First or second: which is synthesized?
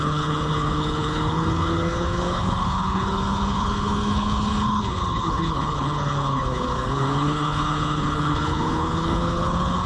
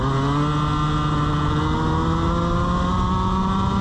first